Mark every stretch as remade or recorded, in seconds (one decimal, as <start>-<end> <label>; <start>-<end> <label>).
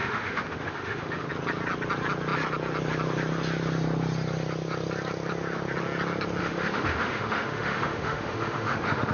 0.0-1.3 remade; 1.3-6.4 recorded; 6.4-9.1 remade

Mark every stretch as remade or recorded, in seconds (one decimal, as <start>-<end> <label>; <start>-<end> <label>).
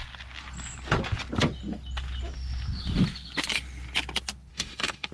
0.0-4.5 recorded; 4.5-5.1 remade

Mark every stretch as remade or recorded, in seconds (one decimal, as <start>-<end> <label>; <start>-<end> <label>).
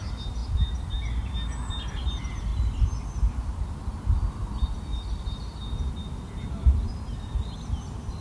0.0-8.2 recorded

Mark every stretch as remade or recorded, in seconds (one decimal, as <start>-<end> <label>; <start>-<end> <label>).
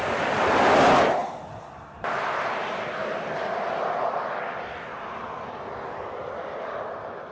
0.0-7.3 recorded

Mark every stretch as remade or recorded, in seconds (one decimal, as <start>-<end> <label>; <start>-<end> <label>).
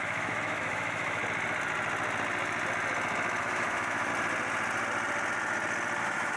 0.0-1.2 remade; 1.2-3.4 recorded; 3.4-4.1 remade; 4.1-6.0 recorded; 6.0-6.4 remade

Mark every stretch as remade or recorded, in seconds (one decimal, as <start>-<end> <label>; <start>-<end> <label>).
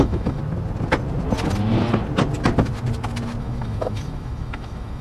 0.0-0.4 remade; 0.4-3.4 recorded; 3.4-5.0 remade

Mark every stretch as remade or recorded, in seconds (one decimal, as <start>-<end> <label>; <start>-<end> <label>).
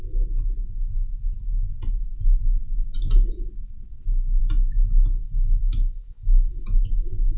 0.0-5.2 recorded; 5.2-7.4 remade